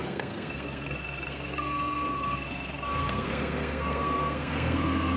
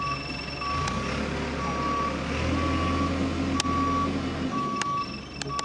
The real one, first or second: second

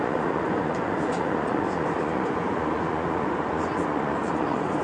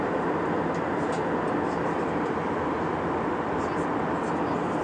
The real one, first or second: second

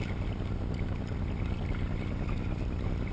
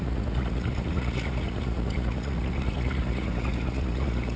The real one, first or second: first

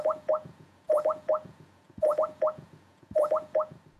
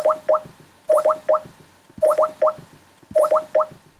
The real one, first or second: second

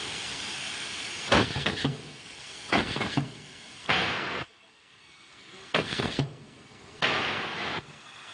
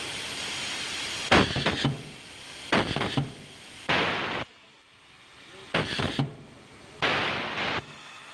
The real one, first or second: second